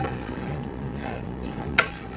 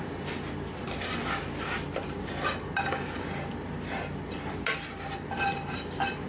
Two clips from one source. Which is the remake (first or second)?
first